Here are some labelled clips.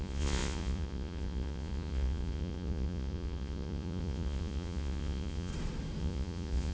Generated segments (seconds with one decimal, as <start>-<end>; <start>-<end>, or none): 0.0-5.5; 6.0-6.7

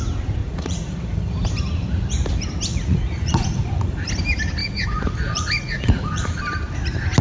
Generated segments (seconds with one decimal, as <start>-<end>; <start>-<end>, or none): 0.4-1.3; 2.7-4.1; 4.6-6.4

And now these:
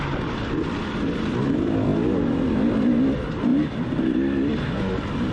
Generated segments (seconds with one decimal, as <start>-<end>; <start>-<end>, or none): none

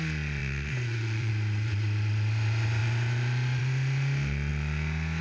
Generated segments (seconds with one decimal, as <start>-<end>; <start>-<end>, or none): 0.4-1.3

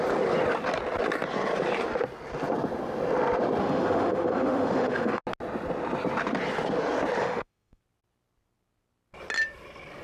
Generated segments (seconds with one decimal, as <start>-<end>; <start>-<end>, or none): 3.6-5.2; 7.2-7.8

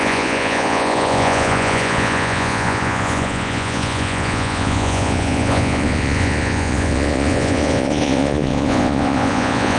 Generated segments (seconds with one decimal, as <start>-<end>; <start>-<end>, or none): 0.0-9.8

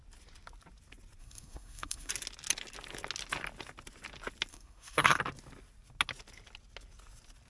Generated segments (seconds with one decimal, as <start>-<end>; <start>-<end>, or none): 1.2-2.1; 4.5-5.2